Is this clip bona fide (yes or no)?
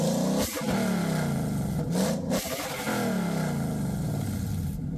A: yes